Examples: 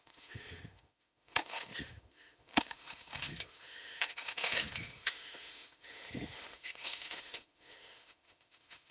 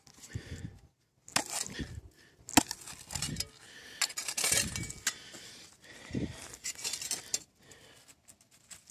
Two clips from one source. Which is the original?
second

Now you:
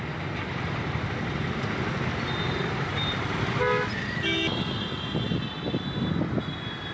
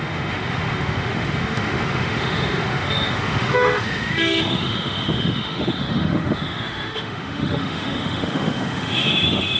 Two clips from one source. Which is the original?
first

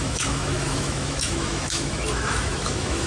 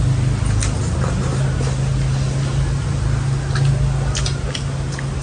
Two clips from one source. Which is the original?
second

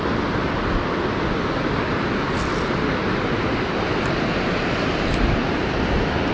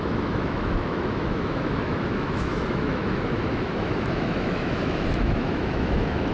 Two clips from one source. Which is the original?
first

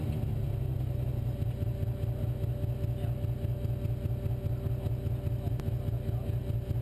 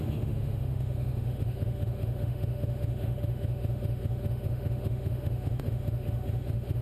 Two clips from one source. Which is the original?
first